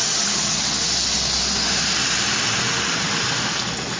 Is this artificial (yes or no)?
no